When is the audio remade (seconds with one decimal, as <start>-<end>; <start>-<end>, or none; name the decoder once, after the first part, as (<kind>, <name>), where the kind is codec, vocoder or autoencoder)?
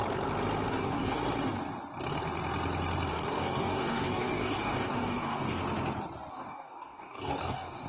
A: 0.7-1.2 (codec, DAC); 3.1-5.6; 6.3-7.9